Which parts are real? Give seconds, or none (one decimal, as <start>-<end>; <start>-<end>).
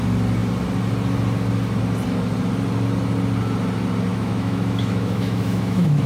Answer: 0.0-4.1